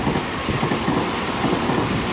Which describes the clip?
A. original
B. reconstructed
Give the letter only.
A